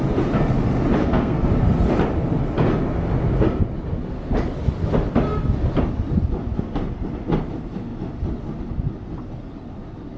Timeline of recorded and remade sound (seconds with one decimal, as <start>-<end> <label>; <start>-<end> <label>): 0.0-1.0 recorded; 1.0-1.5 remade; 1.5-10.2 recorded